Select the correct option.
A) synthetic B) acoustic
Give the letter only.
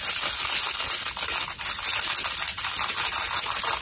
B